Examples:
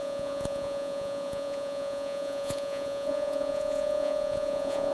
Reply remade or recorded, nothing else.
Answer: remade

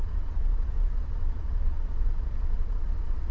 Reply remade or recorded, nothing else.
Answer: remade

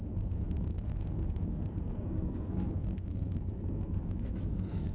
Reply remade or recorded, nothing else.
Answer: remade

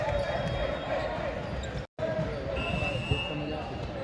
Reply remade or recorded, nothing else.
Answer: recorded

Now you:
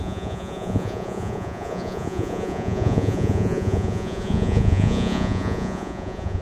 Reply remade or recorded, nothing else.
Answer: remade